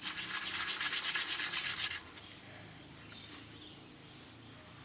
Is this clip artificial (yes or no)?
no